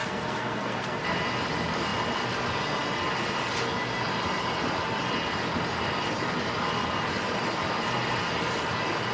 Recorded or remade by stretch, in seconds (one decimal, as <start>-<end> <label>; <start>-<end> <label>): 0.0-1.0 remade; 1.0-9.1 recorded